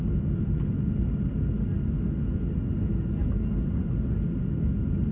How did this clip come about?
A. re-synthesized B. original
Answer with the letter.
B